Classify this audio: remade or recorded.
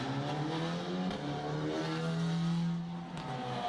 recorded